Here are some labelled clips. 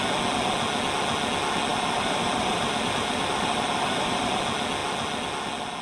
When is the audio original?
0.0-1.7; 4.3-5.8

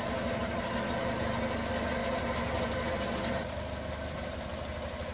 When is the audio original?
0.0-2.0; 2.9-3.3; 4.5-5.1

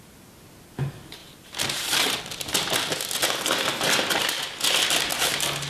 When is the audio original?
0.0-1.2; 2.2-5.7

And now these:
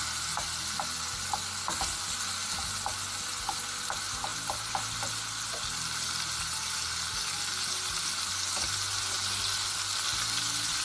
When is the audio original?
0.0-10.8

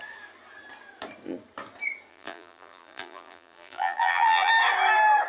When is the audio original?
0.0-2.1; 4.5-5.3